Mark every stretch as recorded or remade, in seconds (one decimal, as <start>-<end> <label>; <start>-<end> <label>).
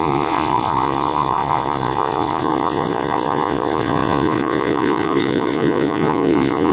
0.0-6.7 remade